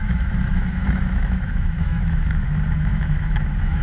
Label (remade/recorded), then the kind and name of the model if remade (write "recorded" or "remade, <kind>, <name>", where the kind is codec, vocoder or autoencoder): remade, autoencoder, DAC-VAE